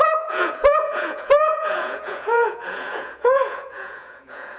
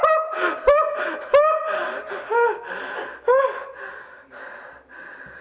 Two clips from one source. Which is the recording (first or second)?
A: second